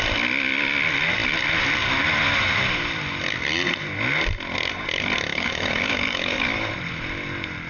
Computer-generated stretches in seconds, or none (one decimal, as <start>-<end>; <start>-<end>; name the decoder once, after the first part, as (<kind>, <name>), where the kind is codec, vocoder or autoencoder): 5.3-6.7 (codec, DAC)

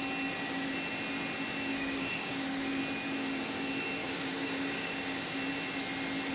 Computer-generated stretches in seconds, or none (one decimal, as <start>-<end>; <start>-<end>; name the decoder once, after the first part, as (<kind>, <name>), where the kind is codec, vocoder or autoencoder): 1.7-2.8 (codec, DAC); 4.0-5.4

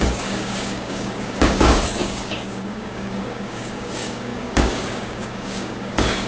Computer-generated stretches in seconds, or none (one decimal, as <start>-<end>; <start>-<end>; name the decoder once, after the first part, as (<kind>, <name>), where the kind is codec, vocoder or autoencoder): 0.0-6.3 (codec, DAC)

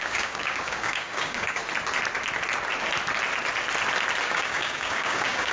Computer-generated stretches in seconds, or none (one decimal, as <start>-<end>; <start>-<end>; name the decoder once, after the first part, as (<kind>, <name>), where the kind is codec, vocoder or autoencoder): 0.0-1.6 (codec, DAC); 4.2-5.5

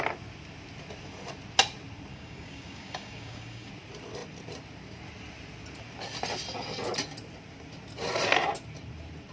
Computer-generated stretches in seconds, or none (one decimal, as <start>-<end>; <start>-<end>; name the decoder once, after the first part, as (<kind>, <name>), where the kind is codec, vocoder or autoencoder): 2.1-3.7 (codec, DAC)

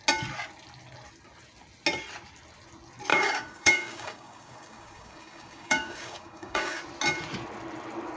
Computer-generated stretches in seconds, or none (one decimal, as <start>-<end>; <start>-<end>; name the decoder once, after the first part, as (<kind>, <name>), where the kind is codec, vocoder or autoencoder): 3.1-6.8 (codec, DAC)

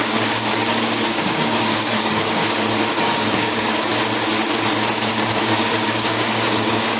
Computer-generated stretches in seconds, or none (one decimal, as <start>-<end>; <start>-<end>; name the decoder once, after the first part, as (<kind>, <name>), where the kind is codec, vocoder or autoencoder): 0.0-2.4 (codec, DAC); 3.0-3.9; 5.1-7.0

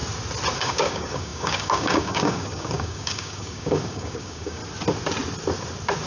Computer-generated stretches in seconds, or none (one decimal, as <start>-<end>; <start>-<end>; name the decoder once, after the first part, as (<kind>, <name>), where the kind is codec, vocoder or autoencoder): 0.6-4.6 (codec, DAC)